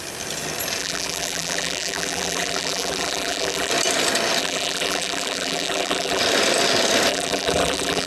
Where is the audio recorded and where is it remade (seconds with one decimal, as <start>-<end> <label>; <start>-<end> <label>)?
0.0-0.8 recorded; 0.8-3.7 remade; 3.7-4.4 recorded; 4.4-6.2 remade; 6.2-7.1 recorded; 7.1-8.1 remade